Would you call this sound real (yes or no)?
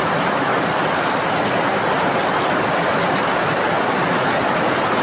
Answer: yes